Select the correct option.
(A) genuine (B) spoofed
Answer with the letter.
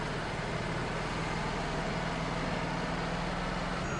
A